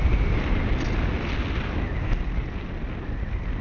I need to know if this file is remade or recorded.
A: recorded